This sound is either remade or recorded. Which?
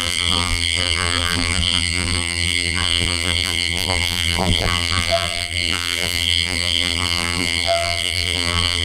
remade